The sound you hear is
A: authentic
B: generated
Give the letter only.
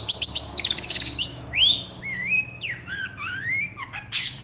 B